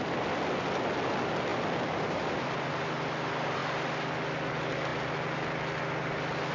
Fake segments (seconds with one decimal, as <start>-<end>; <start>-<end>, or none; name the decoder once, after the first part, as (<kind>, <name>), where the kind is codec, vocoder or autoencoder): none